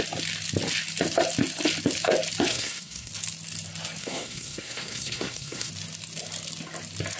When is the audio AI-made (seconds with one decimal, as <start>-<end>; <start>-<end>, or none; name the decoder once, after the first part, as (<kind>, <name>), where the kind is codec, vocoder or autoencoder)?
2.5-3.1 (codec, SNAC); 4.0-5.7